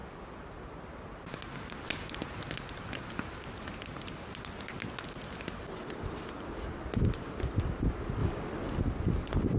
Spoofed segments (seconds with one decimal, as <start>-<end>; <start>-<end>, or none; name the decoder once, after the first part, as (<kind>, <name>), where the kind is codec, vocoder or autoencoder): none